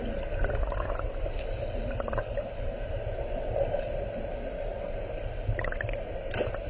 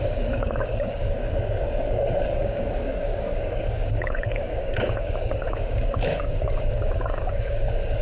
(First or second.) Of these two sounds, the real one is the first